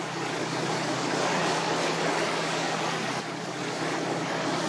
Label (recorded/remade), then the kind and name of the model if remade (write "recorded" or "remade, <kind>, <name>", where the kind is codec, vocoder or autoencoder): remade, codec, DAC